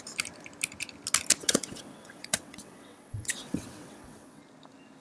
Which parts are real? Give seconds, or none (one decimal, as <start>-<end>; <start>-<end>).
0.0-1.4; 4.4-5.0